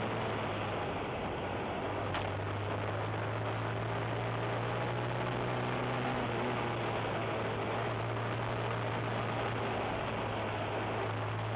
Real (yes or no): yes